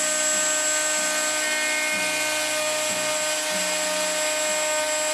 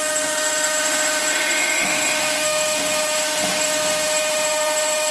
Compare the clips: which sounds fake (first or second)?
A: second